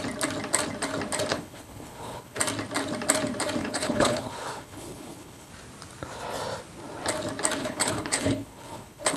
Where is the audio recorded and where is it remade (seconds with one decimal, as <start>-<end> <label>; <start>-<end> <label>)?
0.0-1.3 recorded; 1.3-2.4 remade; 2.4-3.6 recorded; 3.6-5.5 remade; 5.5-7.6 recorded; 7.6-9.2 remade